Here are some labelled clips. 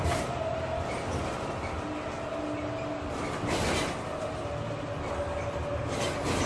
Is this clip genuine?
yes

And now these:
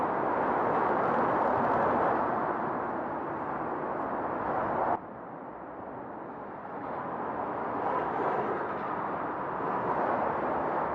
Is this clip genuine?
yes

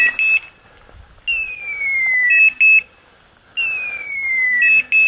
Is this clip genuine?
yes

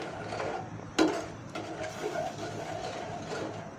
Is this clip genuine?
no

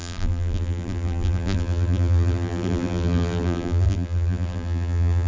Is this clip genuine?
no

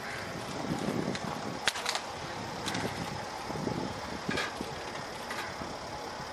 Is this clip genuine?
yes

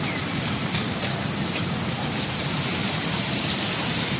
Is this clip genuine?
no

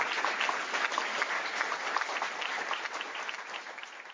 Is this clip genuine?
yes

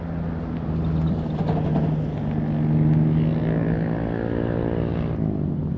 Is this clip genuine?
yes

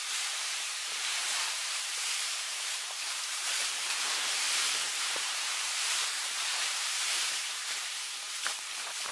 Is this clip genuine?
no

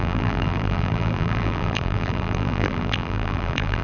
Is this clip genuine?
no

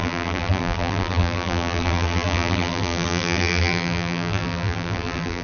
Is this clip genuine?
no